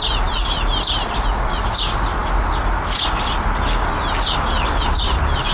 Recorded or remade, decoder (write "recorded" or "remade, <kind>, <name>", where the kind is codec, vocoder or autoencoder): recorded